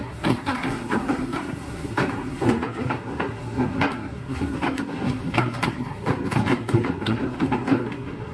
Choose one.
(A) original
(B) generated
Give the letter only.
B